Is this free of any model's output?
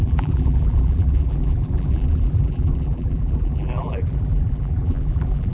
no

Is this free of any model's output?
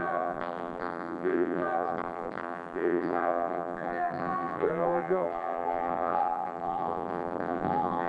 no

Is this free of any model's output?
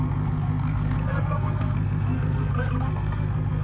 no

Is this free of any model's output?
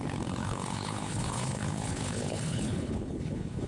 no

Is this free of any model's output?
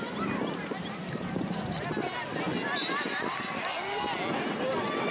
yes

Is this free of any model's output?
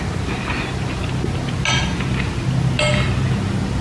yes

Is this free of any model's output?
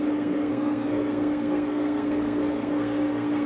no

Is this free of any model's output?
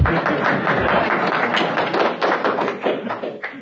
yes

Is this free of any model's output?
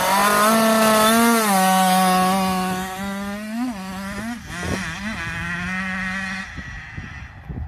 yes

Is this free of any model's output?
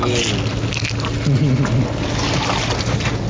yes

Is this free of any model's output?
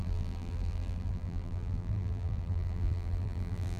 no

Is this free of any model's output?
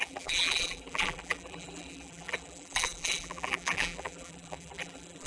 no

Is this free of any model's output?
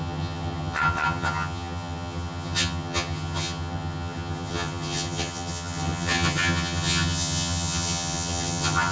no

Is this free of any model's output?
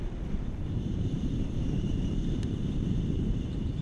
no